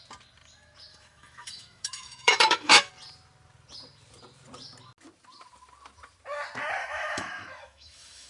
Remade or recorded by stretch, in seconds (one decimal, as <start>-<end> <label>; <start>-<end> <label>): 0.0-0.9 recorded; 0.9-2.9 remade; 2.9-6.8 recorded; 6.8-8.3 remade